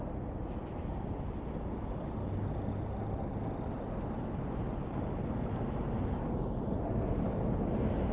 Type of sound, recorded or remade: recorded